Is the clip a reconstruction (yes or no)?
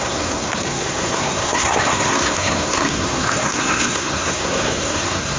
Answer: yes